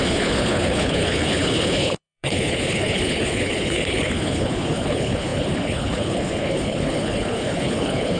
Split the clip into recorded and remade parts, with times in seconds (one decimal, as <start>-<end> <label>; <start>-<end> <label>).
0.0-8.2 remade